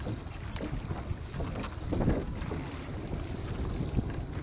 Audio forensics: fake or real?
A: real